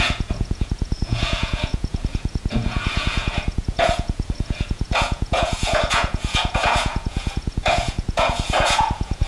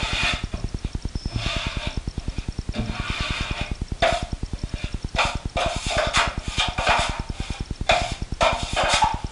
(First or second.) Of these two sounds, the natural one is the second